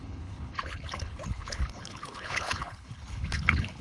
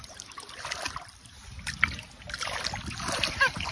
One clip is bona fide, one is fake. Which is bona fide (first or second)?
second